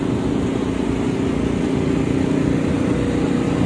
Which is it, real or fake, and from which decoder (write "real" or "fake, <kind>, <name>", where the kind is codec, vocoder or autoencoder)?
real